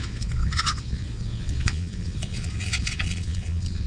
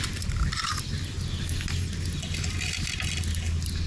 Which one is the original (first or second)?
second